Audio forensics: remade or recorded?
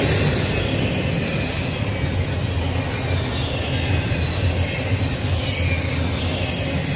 recorded